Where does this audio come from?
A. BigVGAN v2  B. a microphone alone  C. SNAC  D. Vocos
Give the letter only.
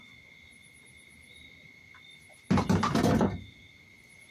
B